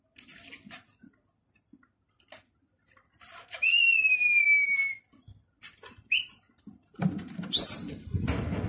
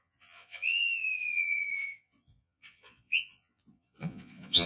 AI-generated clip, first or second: second